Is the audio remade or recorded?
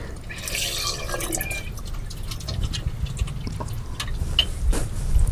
recorded